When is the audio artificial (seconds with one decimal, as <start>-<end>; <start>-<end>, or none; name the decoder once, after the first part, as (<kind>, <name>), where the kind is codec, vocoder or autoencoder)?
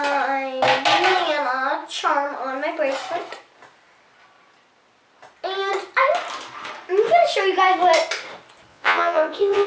8.7-9.7 (vocoder, Vocos)